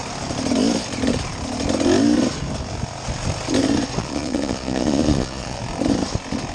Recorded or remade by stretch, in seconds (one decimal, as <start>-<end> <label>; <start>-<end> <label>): 0.0-4.0 recorded; 4.0-5.6 remade; 5.6-6.5 recorded